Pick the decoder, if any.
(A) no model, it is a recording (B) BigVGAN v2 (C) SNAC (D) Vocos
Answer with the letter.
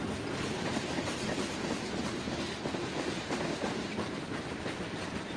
A